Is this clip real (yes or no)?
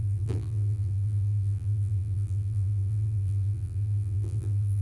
no